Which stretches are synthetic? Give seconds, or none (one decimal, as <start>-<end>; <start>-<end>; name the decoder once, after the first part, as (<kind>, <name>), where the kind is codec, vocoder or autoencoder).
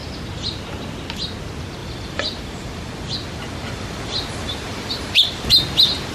1.8-5.5 (vocoder, BigVGAN v2)